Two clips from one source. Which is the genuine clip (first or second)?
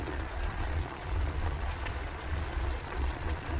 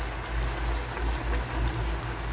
second